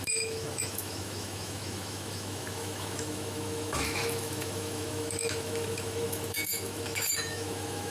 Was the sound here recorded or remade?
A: remade